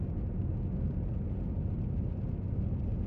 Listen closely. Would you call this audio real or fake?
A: real